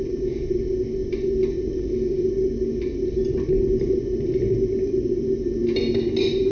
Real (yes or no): yes